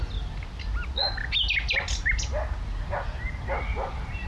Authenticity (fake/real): real